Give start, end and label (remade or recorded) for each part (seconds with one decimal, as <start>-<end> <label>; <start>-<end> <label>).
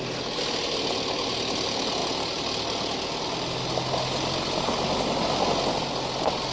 0.0-6.5 recorded